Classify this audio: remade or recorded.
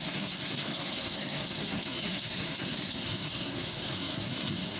remade